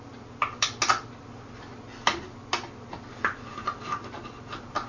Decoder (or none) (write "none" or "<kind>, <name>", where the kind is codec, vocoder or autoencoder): none